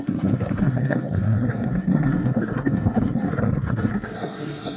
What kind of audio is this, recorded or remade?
remade